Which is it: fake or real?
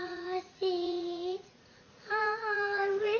fake